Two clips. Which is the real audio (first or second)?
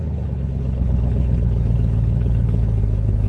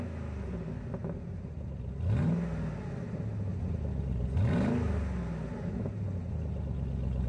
second